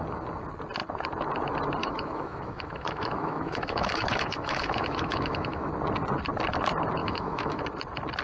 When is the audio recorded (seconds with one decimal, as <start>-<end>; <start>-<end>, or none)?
0.0-1.8; 5.7-7.0; 7.6-8.2